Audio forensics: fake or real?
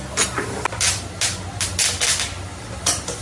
real